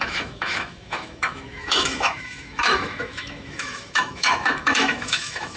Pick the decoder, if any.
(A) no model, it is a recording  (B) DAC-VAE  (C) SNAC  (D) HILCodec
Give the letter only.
B